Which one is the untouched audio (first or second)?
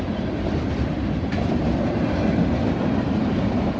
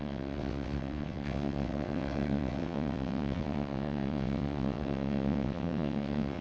first